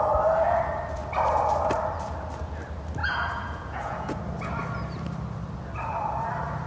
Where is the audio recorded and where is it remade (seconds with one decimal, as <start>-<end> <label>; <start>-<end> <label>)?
0.0-3.0 recorded; 3.0-4.2 remade; 4.2-6.7 recorded